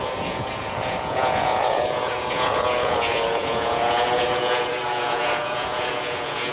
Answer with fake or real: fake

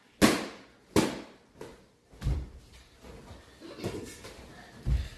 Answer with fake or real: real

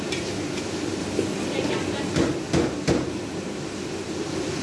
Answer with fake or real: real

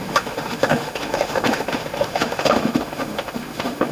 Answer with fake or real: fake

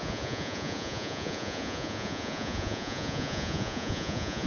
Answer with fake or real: fake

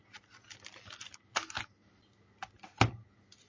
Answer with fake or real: real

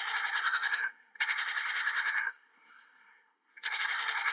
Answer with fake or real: fake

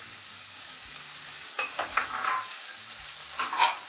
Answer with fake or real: fake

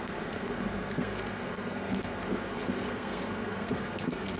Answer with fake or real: fake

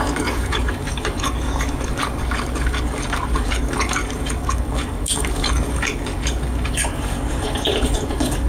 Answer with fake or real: fake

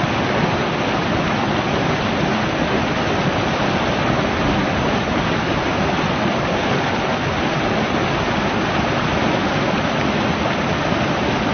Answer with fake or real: real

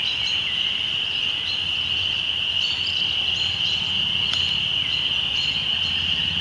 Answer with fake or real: real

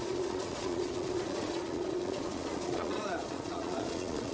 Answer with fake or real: fake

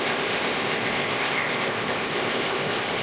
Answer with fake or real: fake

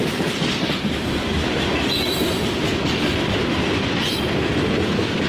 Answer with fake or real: fake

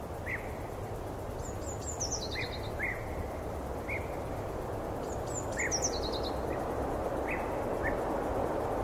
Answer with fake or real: real